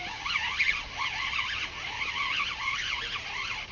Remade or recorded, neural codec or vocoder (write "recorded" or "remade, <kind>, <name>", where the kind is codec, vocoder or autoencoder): recorded